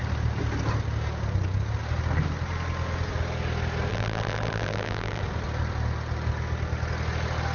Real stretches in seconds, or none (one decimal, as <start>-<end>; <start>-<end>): 0.0-3.9; 5.2-7.5